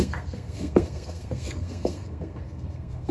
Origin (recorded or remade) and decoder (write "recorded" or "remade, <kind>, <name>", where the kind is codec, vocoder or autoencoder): remade, codec, SNAC